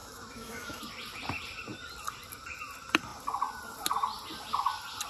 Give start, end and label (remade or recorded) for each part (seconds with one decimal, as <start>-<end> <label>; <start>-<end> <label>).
0.0-0.8 remade; 0.8-5.1 recorded